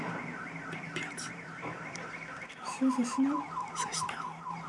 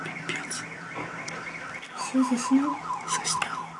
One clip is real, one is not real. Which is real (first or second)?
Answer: second